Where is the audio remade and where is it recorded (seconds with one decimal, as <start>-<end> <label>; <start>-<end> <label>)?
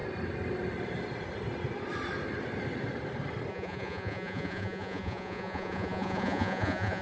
0.0-3.5 recorded; 3.5-7.0 remade